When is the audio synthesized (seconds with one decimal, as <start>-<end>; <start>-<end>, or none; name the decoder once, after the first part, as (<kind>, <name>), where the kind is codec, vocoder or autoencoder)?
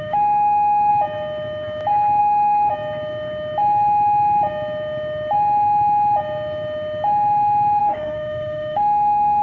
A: 0.0-0.9 (autoencoder, DAC-VAE); 2.2-2.7; 7.8-9.4